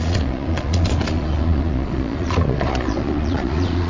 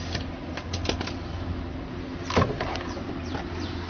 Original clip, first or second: second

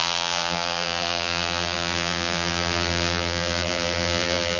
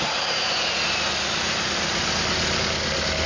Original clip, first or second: second